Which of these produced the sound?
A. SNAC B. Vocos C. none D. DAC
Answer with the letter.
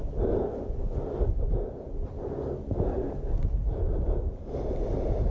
C